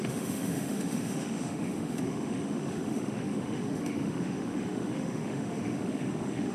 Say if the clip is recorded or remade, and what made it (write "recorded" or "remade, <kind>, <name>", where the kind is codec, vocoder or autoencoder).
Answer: remade, autoencoder, DAC-VAE